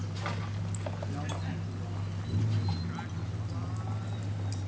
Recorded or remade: recorded